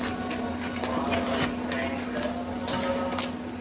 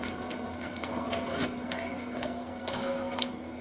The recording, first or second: first